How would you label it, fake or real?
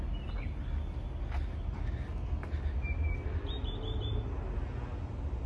real